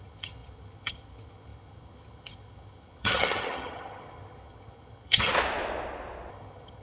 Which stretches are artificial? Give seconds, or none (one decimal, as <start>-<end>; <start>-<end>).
0.0-5.3; 6.3-6.8